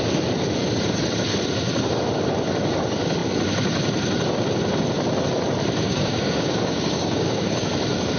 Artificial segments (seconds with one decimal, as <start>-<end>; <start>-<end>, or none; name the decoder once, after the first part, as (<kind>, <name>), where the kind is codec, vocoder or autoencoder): 5.8-7.7 (codec, DAC)